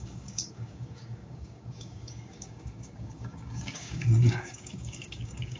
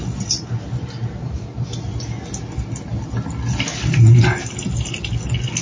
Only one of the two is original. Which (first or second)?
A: second